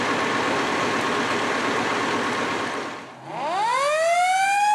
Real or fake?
real